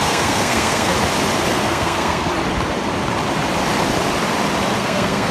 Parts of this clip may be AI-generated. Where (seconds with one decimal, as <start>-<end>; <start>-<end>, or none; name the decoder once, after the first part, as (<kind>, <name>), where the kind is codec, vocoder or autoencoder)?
0.0-0.9 (codec, SNAC); 1.5-2.3; 4.8-5.3